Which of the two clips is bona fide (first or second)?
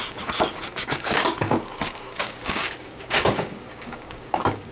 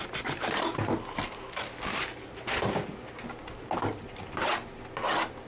second